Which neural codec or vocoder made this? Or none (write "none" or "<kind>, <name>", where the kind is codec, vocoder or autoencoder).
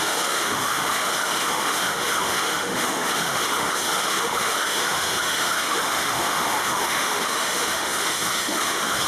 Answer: autoencoder, DAC-VAE